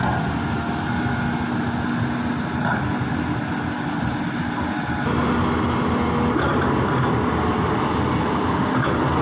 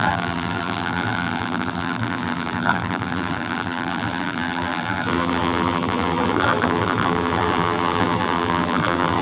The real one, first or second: first